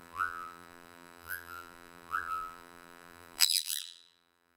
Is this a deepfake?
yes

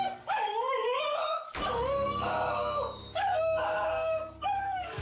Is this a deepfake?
yes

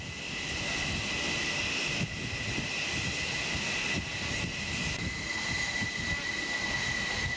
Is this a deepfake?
no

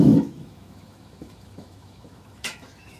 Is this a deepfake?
yes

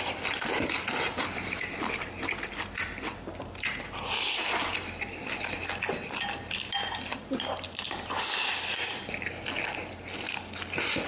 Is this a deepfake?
yes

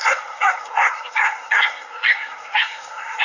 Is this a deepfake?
yes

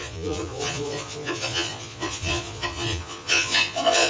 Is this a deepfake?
yes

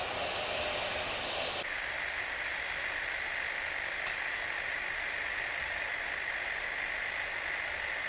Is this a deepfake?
no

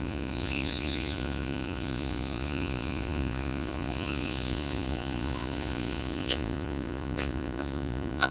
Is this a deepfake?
yes